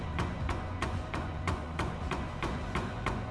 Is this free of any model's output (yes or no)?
no